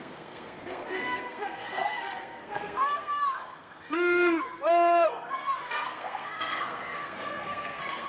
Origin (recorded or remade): remade